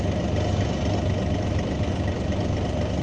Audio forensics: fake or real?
real